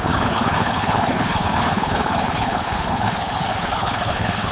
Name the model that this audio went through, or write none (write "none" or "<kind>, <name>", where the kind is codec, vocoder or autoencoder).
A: codec, HILCodec